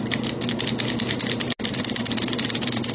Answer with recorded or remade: recorded